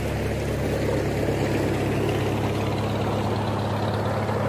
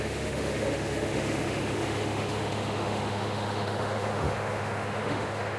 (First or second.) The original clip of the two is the first